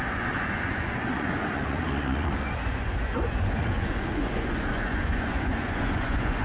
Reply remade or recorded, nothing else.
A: remade